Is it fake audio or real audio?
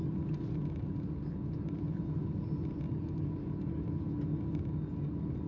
real